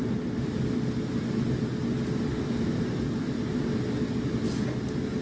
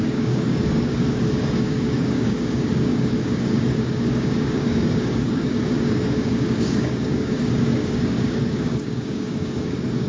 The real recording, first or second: first